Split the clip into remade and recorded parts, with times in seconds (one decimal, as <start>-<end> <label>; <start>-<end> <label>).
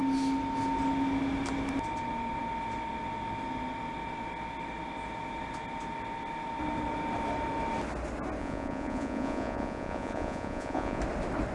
0.0-8.4 recorded; 8.4-11.0 remade; 11.0-11.5 recorded